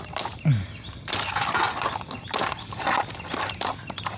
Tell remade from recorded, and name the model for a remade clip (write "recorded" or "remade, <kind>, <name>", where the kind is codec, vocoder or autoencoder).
recorded